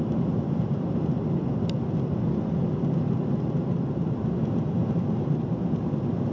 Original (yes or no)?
yes